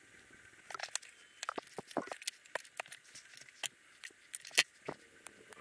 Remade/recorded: recorded